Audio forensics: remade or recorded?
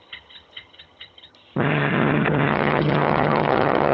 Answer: remade